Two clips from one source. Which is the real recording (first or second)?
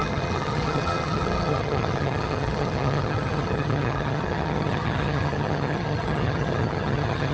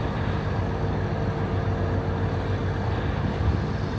second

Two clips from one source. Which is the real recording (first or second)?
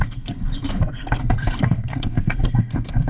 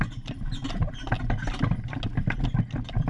second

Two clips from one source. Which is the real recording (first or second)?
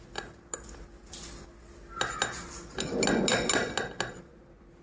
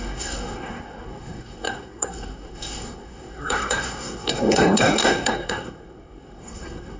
first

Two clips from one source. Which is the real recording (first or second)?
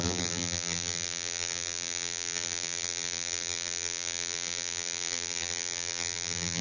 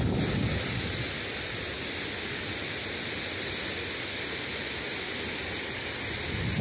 second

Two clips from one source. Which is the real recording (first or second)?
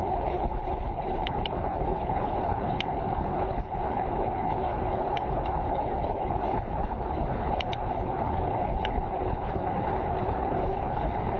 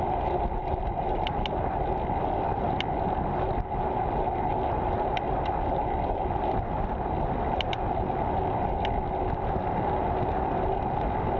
second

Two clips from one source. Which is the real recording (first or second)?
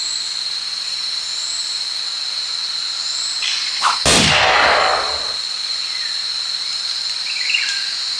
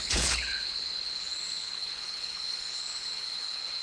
first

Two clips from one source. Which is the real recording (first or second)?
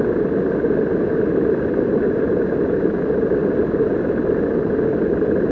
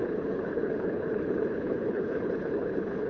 first